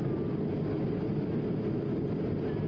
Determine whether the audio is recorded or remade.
recorded